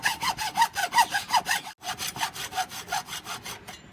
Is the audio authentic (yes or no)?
yes